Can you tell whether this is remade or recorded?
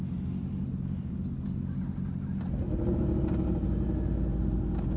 recorded